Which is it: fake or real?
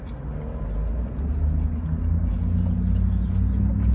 real